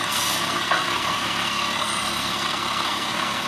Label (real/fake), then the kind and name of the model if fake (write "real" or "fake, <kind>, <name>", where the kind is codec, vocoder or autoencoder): fake, codec, SNAC